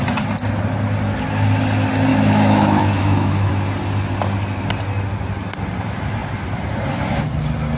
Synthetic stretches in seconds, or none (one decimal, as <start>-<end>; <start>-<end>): 2.1-3.5